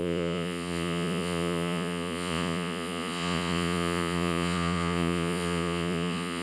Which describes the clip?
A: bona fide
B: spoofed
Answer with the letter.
B